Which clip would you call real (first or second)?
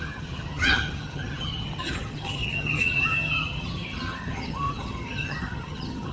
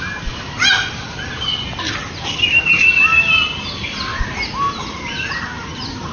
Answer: second